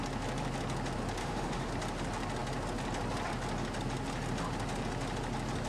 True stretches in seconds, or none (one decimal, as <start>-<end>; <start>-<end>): 0.0-1.2; 1.7-5.7